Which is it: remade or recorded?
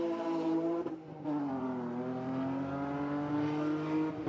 recorded